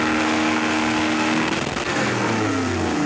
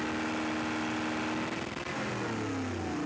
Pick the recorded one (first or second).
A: second